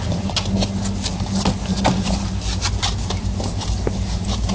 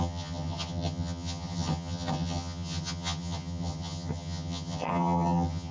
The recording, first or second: first